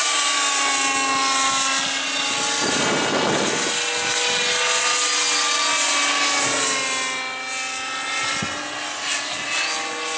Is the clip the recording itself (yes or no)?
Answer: yes